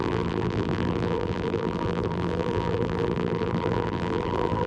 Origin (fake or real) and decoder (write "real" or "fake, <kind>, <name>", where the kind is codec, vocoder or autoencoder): fake, vocoder, BigVGAN v2